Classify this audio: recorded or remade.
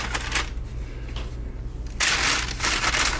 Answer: recorded